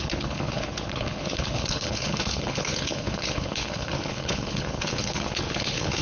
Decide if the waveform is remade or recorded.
remade